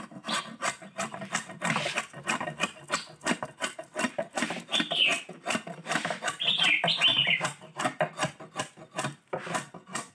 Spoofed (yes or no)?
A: no